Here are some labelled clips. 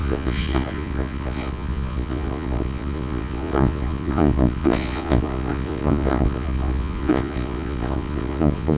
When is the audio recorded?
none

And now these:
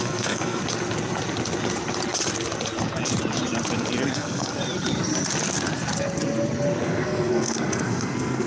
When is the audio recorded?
0.6-4.1; 4.5-6.8

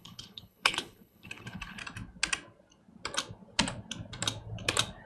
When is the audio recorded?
1.8-5.1